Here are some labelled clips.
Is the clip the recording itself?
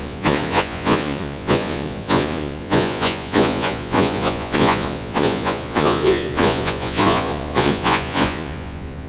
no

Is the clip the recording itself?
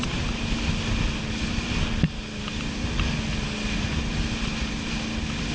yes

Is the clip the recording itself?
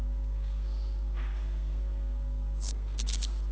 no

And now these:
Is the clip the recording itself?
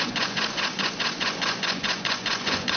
no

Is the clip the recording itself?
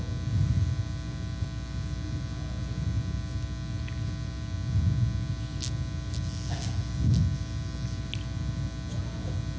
yes